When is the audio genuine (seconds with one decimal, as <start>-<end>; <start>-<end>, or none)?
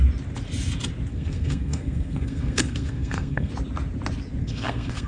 0.0-1.1; 3.5-4.4